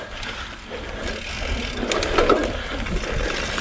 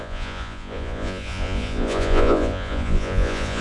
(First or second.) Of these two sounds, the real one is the first